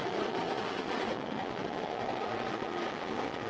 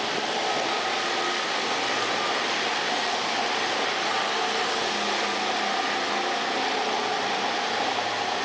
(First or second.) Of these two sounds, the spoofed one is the first